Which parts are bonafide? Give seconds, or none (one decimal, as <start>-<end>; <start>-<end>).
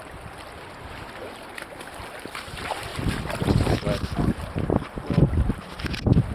0.0-6.3